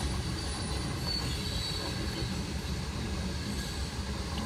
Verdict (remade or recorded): recorded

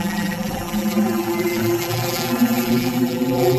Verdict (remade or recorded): remade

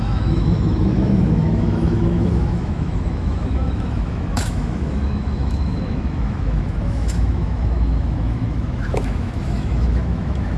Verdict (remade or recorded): remade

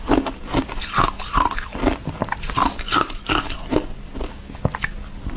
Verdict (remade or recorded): recorded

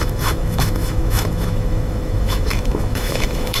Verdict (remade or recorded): remade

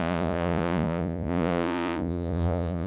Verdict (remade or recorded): remade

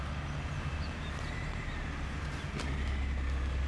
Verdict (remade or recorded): recorded